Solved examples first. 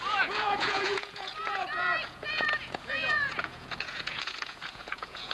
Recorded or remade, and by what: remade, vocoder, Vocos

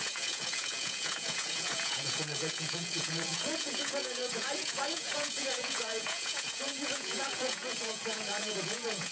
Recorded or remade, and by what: remade, vocoder, Vocos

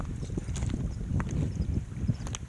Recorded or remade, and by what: recorded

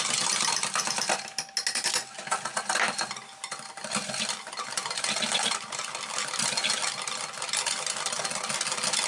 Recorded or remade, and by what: recorded